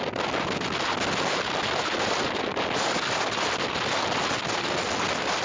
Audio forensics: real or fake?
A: real